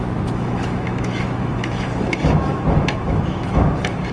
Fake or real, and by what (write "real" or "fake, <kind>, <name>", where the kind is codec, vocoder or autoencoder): fake, autoencoder, DAC-VAE